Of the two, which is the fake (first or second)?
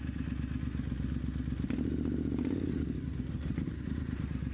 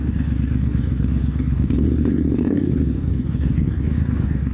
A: second